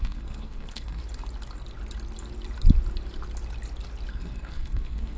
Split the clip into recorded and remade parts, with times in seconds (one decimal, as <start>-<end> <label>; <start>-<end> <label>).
0.0-1.0 remade; 1.0-4.1 recorded; 4.1-5.2 remade

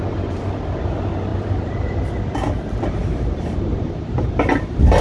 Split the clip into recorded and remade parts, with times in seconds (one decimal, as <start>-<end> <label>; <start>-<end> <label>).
0.0-1.3 recorded; 1.3-4.3 remade; 4.3-5.0 recorded